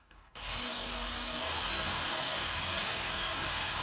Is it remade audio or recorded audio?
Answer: remade